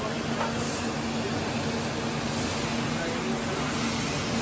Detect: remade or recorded recorded